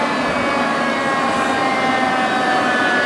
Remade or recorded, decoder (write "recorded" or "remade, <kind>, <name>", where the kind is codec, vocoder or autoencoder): recorded